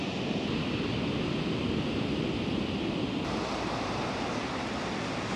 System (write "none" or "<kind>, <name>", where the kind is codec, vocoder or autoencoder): none